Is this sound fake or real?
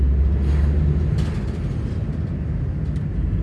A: real